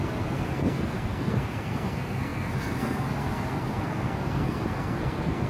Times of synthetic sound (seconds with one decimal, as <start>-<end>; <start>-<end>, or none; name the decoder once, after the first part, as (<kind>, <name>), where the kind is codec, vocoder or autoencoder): 0.0-5.5 (codec, SNAC)